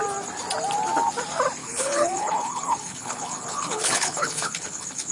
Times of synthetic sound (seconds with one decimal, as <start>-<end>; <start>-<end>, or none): 1.6-5.1